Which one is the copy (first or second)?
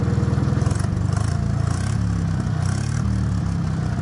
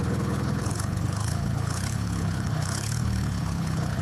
second